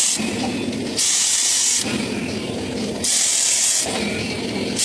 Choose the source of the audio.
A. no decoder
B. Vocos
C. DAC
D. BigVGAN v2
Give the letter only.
A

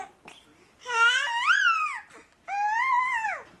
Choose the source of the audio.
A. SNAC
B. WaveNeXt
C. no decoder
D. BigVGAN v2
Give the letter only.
C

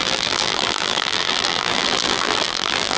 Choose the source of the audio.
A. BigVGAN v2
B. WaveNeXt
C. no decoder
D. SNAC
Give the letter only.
A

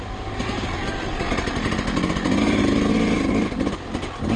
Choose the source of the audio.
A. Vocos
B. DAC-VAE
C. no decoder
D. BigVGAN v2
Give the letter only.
C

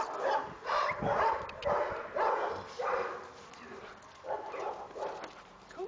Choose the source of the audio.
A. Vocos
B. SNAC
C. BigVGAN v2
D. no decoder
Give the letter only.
C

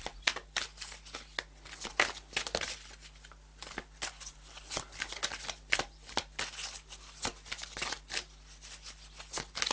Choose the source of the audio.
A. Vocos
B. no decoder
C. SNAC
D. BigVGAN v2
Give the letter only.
B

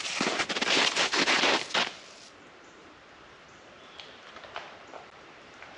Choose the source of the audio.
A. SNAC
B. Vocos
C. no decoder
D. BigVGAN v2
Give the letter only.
D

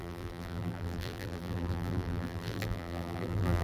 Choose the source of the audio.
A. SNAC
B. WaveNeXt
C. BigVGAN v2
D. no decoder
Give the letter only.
C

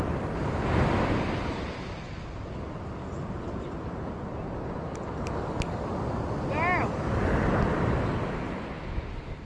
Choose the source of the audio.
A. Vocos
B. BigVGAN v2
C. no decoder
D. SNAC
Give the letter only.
C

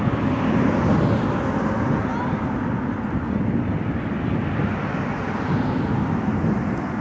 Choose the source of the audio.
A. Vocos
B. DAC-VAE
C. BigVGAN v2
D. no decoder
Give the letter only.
D